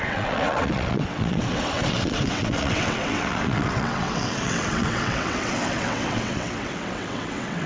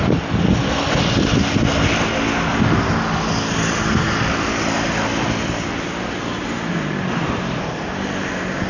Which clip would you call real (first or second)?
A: second